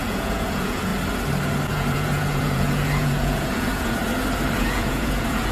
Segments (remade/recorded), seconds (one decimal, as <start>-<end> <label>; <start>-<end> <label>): 0.0-0.9 remade; 0.9-1.7 recorded; 1.7-4.0 remade; 4.0-4.6 recorded; 4.6-5.5 remade